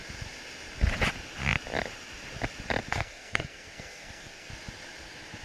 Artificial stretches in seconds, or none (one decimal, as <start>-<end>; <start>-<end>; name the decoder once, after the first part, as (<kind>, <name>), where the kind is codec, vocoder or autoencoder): 2.9-4.5 (codec, SNAC)